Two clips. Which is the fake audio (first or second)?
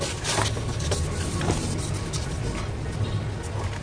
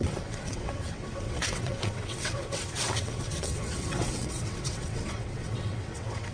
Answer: second